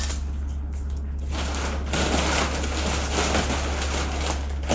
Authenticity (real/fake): real